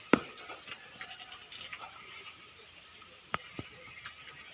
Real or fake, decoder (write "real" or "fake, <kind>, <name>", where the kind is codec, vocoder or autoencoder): real